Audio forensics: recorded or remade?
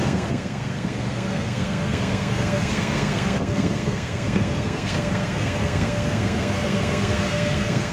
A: remade